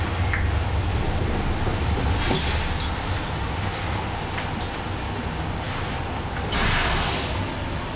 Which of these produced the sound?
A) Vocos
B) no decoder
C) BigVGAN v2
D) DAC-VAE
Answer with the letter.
B